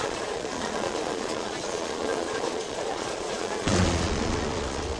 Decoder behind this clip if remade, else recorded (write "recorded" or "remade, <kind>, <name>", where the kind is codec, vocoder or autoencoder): remade, vocoder, Vocos